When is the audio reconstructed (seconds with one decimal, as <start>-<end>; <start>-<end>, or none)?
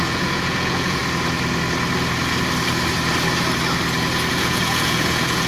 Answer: 0.0-1.0; 4.3-5.5